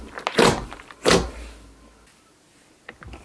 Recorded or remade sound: recorded